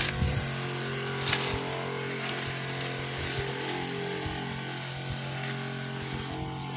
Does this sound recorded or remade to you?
recorded